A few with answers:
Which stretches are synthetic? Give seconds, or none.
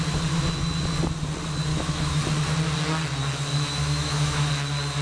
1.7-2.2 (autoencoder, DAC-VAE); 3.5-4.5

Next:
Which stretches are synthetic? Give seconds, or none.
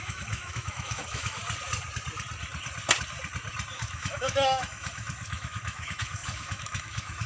0.0-1.4 (autoencoder, DAC-VAE); 3.7-7.3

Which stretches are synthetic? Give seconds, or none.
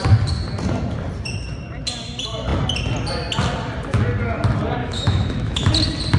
4.8-5.7 (autoencoder, DAC-VAE)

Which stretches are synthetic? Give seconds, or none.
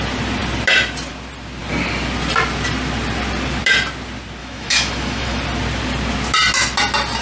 4.4-5.4 (autoencoder, DAC-VAE)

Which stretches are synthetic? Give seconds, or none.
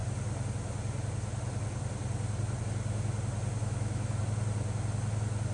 3.6-4.2 (autoencoder, DAC-VAE)